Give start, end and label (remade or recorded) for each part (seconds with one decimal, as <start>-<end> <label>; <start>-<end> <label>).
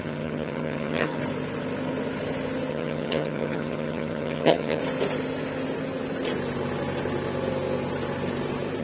0.0-1.2 remade; 1.2-2.7 recorded; 2.7-4.8 remade; 4.8-8.8 recorded